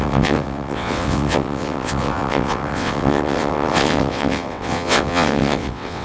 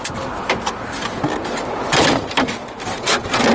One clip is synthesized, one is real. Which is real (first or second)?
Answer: second